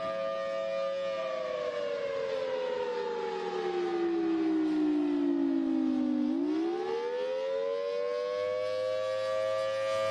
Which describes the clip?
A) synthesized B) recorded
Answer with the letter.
B